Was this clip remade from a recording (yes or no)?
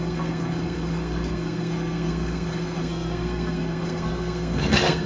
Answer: yes